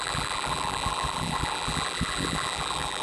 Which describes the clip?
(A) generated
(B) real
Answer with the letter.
A